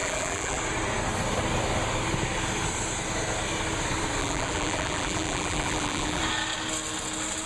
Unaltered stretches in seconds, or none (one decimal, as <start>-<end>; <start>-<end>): 0.6-4.2; 6.2-7.5

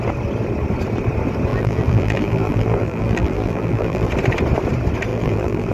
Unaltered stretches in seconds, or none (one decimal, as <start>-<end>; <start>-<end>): 0.0-1.5; 4.1-5.1

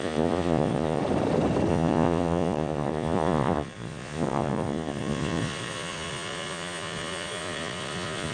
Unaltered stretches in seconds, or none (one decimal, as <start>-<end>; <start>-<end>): 1.0-1.7

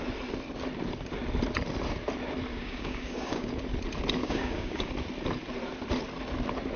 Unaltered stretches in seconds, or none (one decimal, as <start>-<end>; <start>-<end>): 0.0-2.5; 3.5-4.2; 4.9-6.8